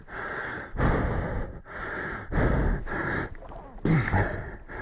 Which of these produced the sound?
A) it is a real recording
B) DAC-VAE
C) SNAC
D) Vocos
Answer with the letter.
A